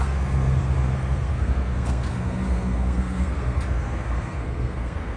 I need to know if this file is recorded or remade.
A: remade